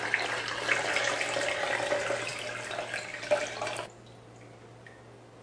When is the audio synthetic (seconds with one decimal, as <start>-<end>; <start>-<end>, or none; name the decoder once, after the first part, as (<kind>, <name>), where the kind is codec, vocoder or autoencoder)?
none